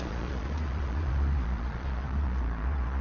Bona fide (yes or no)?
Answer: no